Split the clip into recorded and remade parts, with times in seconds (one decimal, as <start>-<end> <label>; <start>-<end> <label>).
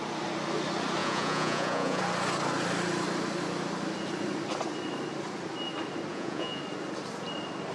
0.0-1.0 recorded; 1.0-2.0 remade; 2.0-6.1 recorded; 6.1-6.6 remade; 6.6-7.7 recorded